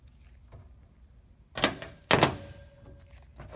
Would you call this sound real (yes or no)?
yes